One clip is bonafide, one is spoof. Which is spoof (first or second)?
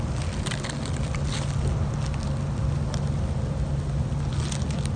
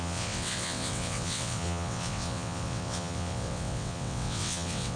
second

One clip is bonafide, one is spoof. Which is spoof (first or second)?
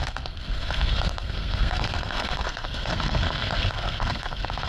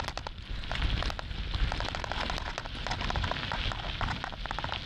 first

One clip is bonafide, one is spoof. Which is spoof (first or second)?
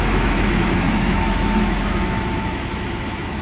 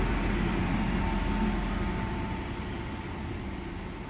first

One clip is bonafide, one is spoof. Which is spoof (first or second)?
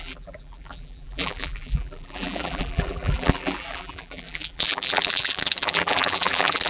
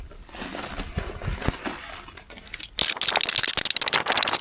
first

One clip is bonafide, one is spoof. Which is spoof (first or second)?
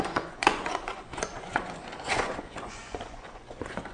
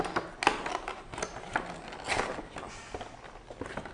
first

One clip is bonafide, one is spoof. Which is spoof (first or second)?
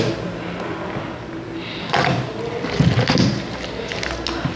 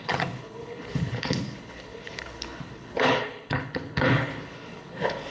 second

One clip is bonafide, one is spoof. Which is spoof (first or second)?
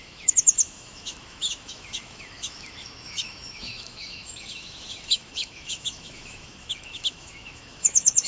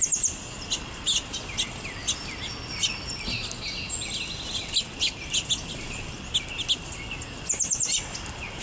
first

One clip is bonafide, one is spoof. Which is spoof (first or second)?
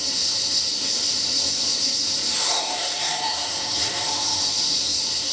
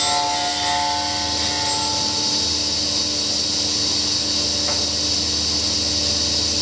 first